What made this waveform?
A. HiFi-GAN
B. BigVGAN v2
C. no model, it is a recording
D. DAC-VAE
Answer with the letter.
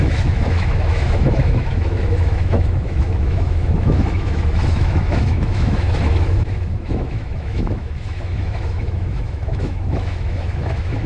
D